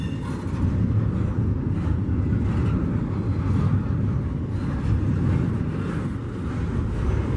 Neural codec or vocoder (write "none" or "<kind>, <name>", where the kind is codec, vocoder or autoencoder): none